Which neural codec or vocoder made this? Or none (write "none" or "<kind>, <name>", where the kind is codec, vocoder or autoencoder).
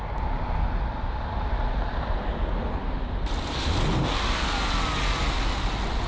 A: none